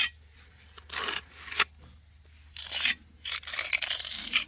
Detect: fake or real real